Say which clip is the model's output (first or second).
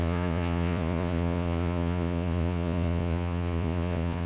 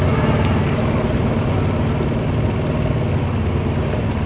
first